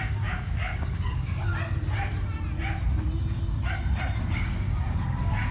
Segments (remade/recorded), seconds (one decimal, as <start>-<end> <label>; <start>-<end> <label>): 0.0-1.5 remade; 1.5-4.2 recorded; 4.2-5.5 remade